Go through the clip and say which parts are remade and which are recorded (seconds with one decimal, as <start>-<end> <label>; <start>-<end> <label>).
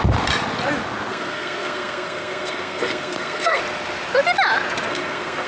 0.0-1.1 recorded; 1.1-3.6 remade; 3.6-4.9 recorded; 4.9-5.5 remade